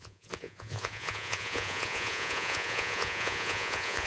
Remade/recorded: remade